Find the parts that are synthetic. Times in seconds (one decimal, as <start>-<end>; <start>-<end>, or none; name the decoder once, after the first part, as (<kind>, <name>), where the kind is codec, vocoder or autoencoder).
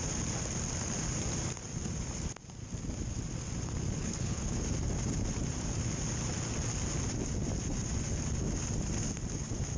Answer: 4.0-4.6 (codec, HILCodec)